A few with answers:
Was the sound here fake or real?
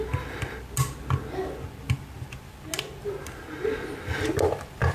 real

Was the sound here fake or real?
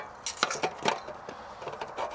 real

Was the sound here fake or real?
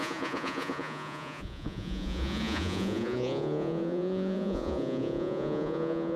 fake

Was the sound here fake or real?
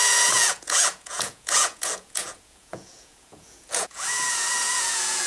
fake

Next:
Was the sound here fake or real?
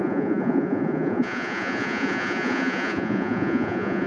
fake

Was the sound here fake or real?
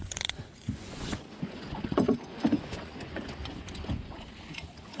fake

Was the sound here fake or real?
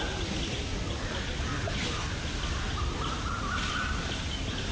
real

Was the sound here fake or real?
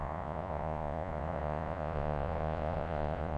fake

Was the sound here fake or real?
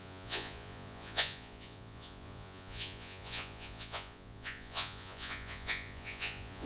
fake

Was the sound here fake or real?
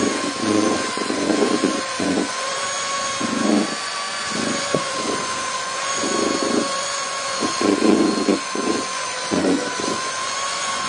fake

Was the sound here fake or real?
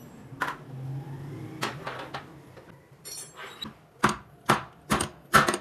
real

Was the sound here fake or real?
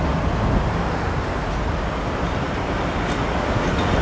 real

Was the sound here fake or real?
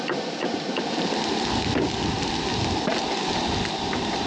real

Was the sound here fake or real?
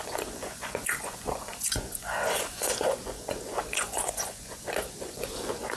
fake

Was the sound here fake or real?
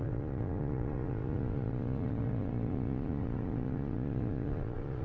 fake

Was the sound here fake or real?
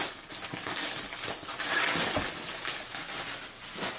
real